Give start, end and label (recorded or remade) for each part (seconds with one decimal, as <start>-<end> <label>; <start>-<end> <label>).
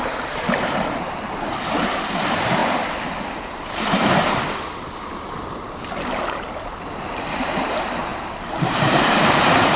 0.0-2.6 remade; 2.6-5.7 recorded; 5.7-9.8 remade